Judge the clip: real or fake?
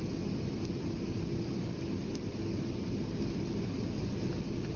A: real